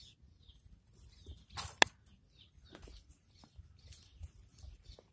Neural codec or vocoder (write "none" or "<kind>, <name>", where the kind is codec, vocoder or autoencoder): none